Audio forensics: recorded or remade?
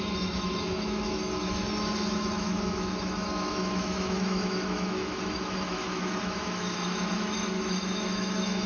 remade